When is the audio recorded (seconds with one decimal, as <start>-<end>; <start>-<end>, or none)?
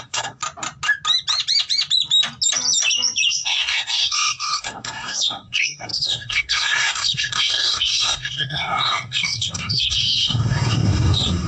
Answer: 0.4-3.3